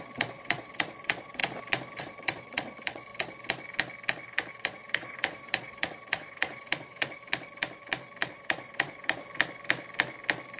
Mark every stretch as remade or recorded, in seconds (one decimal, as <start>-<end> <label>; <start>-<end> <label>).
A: 0.0-1.4 remade; 1.4-2.0 recorded; 2.0-3.1 remade; 3.1-4.5 recorded; 4.5-7.2 remade; 7.2-8.3 recorded; 8.3-9.2 remade; 9.2-10.6 recorded